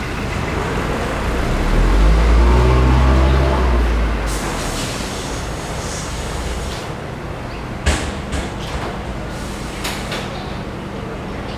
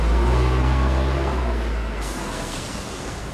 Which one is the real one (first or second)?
first